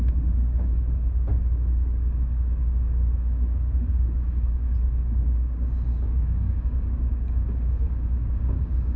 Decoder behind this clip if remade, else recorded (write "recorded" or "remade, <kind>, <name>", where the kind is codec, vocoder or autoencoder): remade, codec, DAC